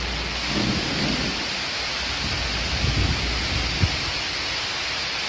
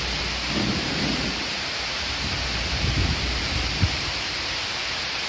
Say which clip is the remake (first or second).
second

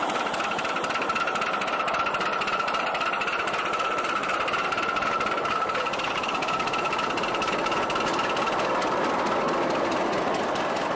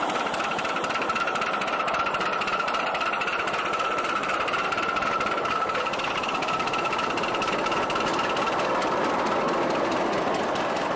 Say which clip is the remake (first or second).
second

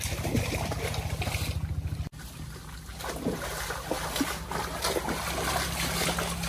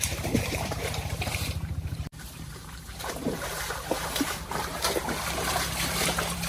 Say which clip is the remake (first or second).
second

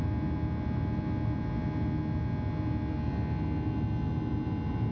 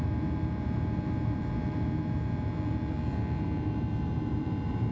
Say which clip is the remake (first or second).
second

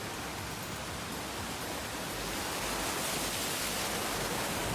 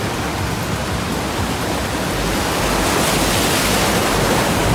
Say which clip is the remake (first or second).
second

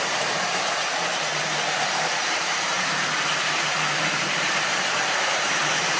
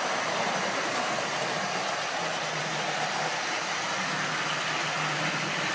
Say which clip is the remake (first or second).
first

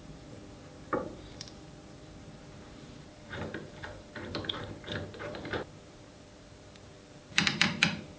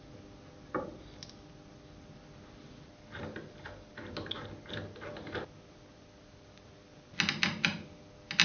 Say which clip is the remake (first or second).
first